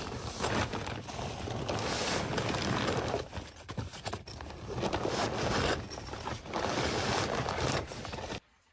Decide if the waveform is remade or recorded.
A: recorded